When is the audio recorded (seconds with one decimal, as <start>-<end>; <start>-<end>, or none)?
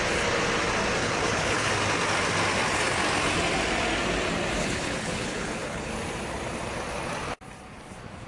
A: 0.0-1.0; 1.7-4.6; 5.9-8.3